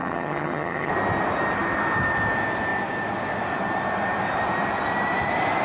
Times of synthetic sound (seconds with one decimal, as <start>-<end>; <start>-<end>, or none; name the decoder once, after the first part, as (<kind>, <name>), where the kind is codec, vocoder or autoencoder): 0.0-0.9 (vocoder, HiFi-GAN)